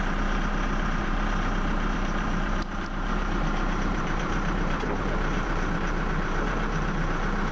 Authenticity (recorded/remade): remade